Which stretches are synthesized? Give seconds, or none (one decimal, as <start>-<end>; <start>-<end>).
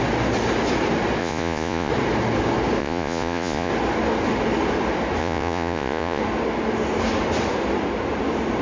1.2-1.9; 2.8-3.7; 5.2-6.2